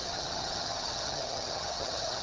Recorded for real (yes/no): no